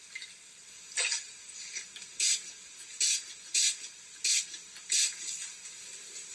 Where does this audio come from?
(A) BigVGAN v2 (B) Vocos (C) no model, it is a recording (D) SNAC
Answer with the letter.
C